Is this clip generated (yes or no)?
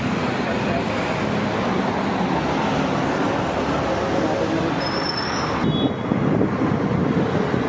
no